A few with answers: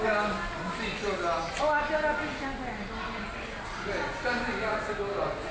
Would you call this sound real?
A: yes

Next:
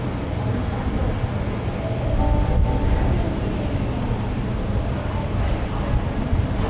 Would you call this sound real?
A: yes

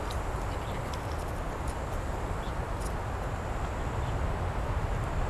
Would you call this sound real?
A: yes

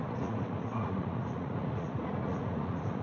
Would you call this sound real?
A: no